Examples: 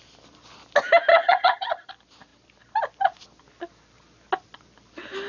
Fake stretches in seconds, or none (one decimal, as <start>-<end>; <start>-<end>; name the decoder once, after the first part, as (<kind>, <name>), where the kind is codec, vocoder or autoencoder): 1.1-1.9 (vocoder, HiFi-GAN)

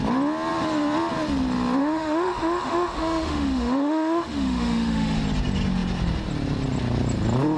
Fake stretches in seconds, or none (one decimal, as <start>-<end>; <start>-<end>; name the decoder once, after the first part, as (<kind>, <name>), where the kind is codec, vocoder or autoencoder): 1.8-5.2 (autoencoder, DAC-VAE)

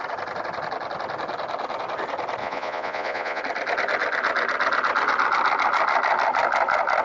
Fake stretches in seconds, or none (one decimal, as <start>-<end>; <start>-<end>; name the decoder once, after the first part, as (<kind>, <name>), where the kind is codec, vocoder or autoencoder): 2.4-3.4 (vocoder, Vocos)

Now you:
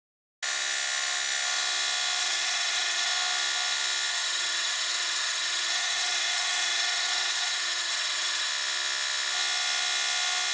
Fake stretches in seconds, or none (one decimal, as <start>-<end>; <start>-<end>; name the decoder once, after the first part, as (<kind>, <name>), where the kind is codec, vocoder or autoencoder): 2.2-3.1 (vocoder, HiFi-GAN); 4.1-8.5

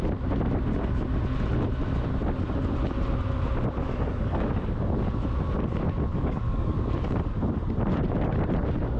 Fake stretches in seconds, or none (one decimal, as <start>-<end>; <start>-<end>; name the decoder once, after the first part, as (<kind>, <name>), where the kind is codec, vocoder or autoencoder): 3.8-4.7 (codec, DAC); 6.1-7.2